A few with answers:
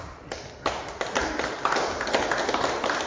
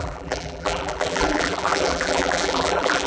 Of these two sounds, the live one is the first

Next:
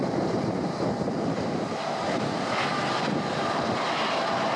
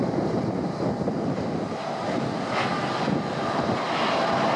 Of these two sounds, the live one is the second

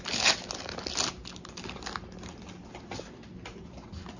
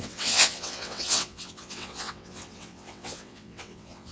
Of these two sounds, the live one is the first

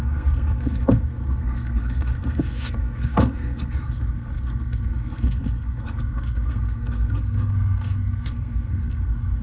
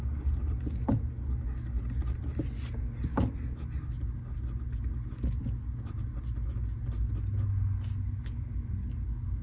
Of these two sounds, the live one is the second